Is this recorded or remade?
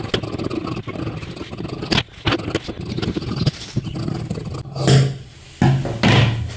recorded